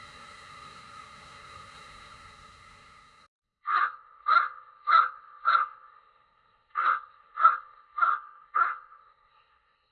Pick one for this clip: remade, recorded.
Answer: remade